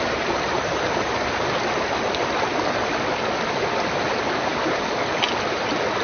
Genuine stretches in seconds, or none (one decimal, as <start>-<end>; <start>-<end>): 0.0-6.0